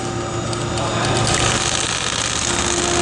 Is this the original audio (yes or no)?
yes